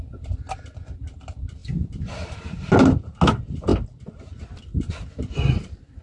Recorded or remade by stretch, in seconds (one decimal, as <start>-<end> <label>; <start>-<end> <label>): 0.0-6.0 recorded